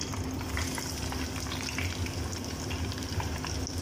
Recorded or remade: recorded